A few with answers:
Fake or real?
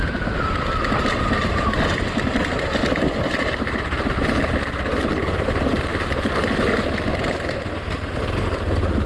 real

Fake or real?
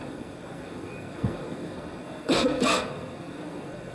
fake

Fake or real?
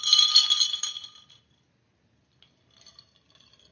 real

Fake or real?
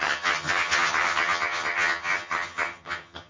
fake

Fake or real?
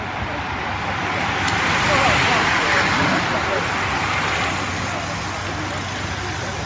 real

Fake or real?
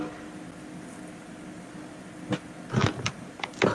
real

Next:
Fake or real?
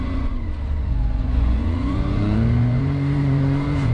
fake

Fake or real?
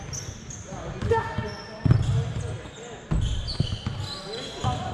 real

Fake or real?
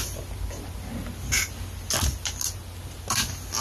real